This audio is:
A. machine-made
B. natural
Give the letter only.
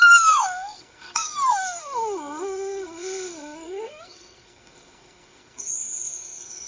A